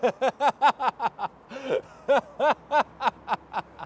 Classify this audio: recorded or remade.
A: recorded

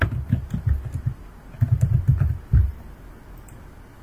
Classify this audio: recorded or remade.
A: recorded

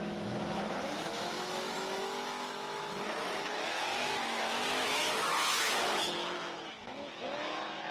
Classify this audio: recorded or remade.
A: remade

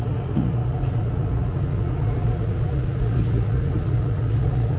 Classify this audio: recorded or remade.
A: remade